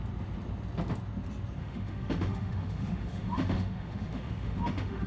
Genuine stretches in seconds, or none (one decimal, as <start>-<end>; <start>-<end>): 0.0-1.6